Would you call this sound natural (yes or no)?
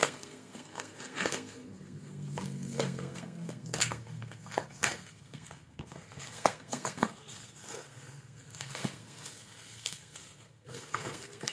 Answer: no